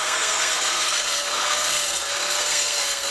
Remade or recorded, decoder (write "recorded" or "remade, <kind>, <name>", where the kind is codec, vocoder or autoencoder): remade, codec, SNAC